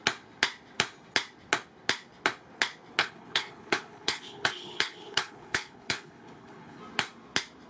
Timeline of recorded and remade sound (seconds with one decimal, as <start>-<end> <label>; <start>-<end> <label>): 0.0-3.0 recorded; 3.0-6.8 remade; 6.8-7.7 recorded